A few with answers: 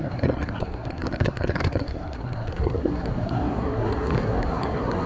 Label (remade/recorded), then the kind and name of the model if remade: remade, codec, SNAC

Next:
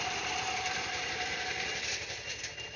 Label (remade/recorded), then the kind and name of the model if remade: recorded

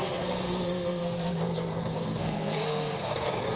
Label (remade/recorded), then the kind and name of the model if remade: remade, codec, SNAC